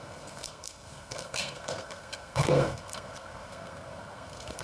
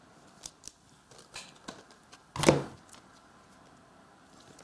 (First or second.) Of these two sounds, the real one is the second